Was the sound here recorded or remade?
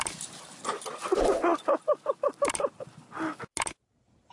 recorded